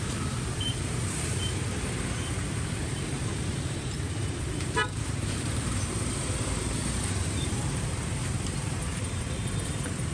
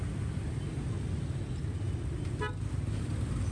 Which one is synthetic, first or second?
first